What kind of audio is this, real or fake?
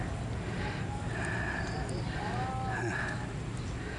real